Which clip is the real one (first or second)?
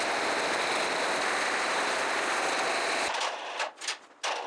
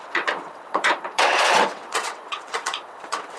first